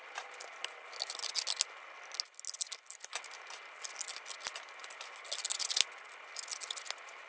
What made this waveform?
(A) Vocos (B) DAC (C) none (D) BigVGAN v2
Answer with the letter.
C